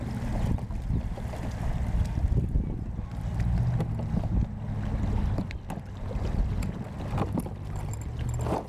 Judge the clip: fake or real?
real